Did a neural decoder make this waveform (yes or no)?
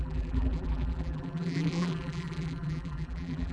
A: yes